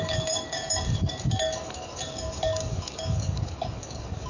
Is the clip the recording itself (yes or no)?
no